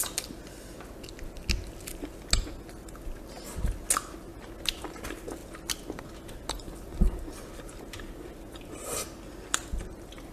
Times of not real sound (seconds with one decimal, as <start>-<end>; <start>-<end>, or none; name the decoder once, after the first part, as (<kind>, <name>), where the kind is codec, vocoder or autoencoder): none